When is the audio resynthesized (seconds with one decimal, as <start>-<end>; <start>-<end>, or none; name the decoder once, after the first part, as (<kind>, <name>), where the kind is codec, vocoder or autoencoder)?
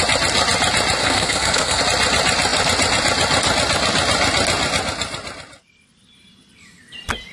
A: 1.0-1.8 (codec, SNAC)